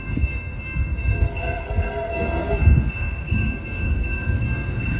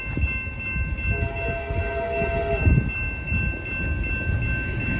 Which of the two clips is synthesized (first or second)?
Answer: first